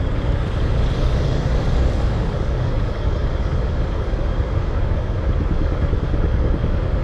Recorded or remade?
remade